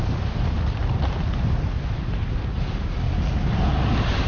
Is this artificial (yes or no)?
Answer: no